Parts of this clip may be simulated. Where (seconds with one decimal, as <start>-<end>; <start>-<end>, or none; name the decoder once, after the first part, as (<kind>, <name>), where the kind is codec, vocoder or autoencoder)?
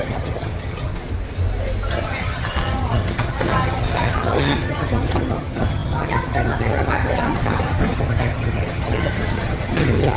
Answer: 0.0-0.9 (vocoder, HiFi-GAN); 1.9-10.2